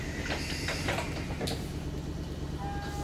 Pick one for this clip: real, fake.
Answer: real